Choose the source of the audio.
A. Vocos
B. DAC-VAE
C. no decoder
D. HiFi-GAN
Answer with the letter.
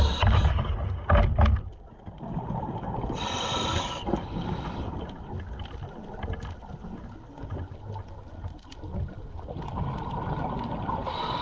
C